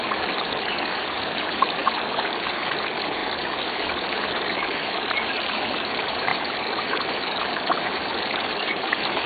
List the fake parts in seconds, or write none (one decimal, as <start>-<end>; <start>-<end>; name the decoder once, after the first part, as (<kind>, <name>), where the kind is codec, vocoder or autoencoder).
0.0-9.3 (codec, DAC)